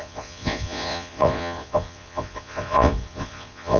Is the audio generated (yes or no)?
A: yes